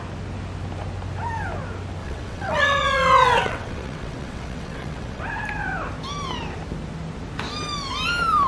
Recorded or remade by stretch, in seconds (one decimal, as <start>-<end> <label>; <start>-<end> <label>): 0.0-2.0 recorded; 2.0-5.2 remade; 5.2-8.5 recorded